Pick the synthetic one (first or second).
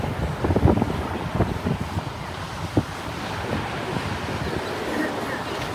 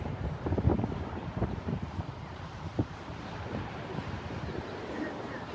second